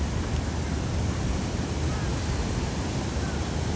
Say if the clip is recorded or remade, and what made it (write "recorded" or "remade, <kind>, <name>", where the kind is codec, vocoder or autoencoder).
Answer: recorded